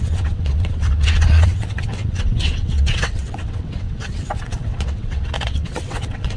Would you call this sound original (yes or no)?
no